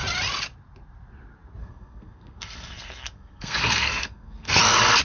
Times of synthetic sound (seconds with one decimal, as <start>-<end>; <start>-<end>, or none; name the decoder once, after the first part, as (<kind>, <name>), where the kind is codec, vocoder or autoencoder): 1.6-4.6 (codec, SNAC)